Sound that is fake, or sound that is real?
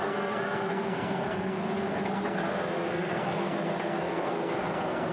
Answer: fake